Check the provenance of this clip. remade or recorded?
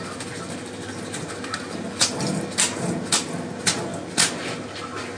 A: recorded